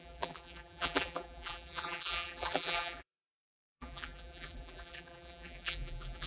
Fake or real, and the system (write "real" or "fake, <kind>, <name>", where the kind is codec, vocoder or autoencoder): fake, vocoder, BigVGAN v2